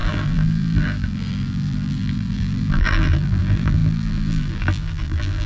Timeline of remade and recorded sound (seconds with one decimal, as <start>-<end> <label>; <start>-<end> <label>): 0.0-5.5 remade